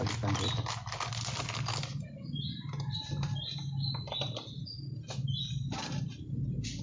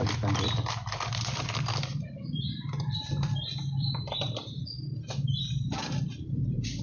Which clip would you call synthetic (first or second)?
second